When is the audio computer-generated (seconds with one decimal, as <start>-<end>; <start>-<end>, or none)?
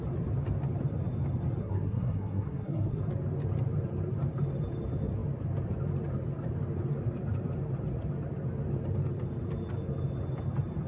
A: 1.6-3.0